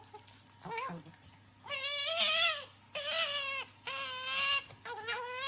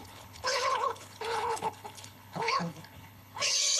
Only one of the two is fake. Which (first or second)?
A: second